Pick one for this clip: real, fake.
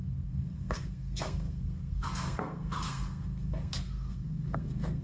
fake